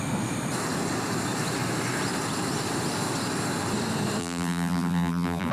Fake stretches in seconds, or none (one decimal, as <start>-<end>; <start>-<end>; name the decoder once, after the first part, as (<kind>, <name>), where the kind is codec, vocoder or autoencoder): 4.2-5.5 (vocoder, BigVGAN v2)